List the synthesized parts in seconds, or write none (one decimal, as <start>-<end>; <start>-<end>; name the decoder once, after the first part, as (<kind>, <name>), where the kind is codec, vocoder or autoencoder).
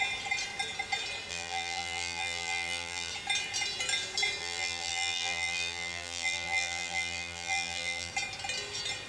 1.3-3.1 (vocoder, BigVGAN v2); 4.4-8.1